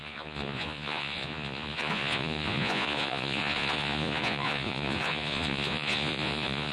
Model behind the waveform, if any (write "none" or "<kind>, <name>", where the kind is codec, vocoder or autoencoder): vocoder, Vocos